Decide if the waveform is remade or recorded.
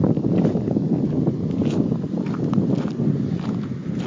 recorded